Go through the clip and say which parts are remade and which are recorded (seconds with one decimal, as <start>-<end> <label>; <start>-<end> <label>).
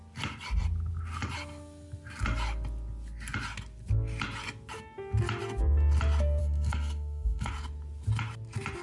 0.0-6.4 recorded; 6.4-7.5 remade; 7.5-8.8 recorded